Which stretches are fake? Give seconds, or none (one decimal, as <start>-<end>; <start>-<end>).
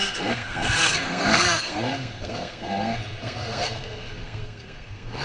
0.0-5.2